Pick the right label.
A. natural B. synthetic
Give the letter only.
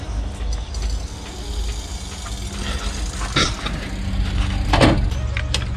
A